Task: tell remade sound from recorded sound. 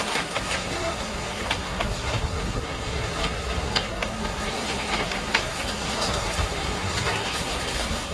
remade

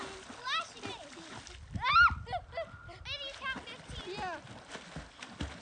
recorded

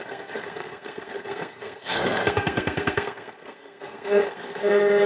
remade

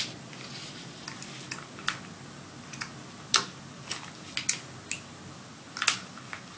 recorded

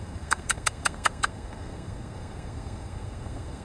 remade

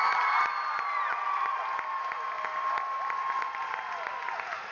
recorded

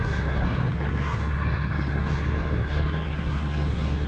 remade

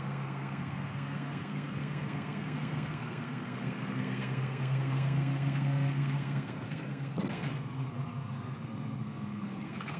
remade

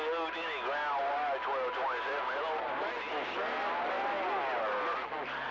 recorded